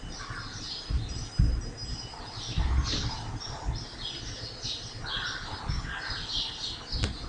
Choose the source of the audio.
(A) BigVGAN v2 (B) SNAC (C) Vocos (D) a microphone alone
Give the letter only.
D